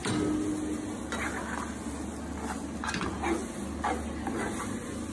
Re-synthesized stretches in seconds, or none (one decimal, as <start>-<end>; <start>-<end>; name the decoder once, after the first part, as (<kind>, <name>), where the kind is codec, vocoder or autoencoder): none

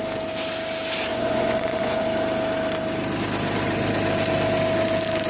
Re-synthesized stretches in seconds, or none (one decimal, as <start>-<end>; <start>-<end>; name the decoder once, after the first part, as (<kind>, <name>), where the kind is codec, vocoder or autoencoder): 1.1-2.0 (vocoder, Vocos)

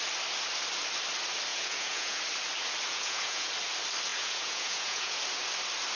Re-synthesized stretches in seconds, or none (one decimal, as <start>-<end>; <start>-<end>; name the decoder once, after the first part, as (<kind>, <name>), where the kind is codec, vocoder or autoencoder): 1.5-2.2 (vocoder, Vocos); 2.9-3.5; 4.1-5.2

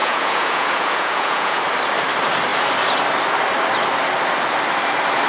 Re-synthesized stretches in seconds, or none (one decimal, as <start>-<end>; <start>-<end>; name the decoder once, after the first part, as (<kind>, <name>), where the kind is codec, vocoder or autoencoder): 0.0-1.6 (vocoder, Vocos)

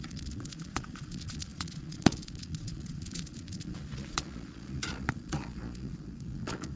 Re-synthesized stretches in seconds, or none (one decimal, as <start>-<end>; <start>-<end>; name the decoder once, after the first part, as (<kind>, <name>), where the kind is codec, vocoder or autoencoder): 0.0-6.8 (vocoder, Vocos)

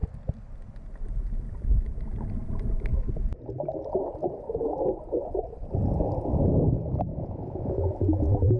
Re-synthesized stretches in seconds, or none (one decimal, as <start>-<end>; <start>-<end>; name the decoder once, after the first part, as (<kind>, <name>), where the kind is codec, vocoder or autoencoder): 7.1-7.8 (vocoder, Vocos)

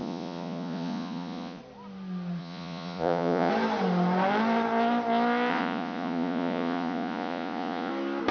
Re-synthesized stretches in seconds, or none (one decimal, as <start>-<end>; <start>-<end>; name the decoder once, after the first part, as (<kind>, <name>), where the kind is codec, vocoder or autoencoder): 0.0-1.6 (vocoder, Vocos); 2.4-3.5; 5.5-7.9

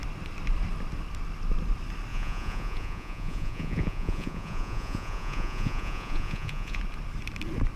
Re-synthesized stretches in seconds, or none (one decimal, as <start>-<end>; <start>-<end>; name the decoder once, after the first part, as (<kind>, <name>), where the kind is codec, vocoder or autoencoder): 2.1-6.8 (vocoder, Vocos)